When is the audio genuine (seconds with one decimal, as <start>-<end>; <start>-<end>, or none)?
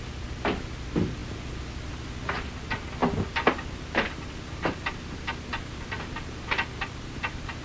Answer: 0.0-7.6